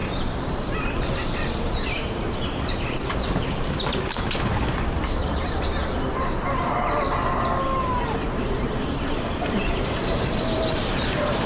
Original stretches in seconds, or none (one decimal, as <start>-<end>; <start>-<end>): 5.8-8.6